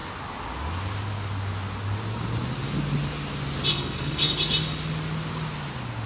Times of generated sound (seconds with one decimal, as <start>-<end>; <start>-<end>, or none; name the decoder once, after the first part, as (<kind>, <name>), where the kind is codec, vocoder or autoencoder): 3.7-4.3 (codec, SNAC)